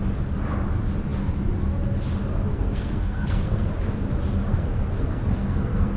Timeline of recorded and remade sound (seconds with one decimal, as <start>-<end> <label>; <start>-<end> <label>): 0.0-2.5 recorded; 2.5-3.7 remade; 3.7-4.4 recorded; 4.4-6.0 remade